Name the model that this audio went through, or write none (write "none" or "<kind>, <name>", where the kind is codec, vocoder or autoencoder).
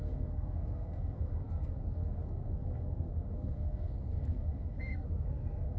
codec, SNAC